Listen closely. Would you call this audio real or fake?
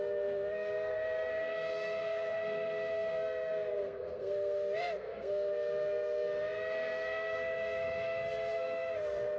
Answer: fake